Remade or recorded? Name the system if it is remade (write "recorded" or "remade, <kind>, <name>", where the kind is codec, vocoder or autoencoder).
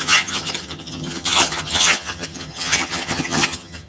remade, vocoder, HiFi-GAN